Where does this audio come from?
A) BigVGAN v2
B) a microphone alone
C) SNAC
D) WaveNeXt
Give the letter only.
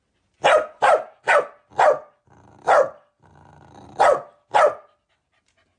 B